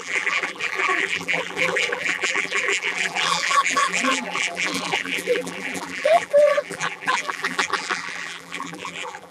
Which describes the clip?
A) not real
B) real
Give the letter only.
A